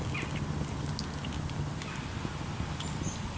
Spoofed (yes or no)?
no